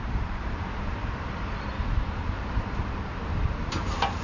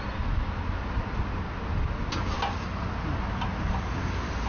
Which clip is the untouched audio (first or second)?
second